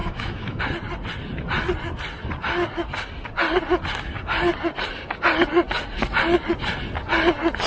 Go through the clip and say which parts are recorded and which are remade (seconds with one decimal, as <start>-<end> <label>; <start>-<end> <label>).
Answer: 0.0-0.6 remade; 0.6-7.7 recorded